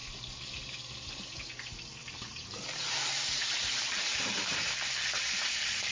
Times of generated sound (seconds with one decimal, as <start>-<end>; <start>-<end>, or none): 1.1-5.9